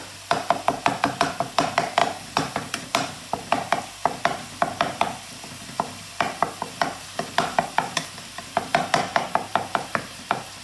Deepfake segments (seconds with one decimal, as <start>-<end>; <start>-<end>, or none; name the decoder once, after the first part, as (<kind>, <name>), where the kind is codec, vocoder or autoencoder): 2.0-3.8 (vocoder, BigVGAN v2); 9.1-10.2